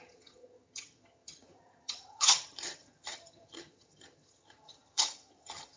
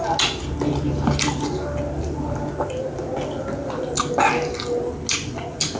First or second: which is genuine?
second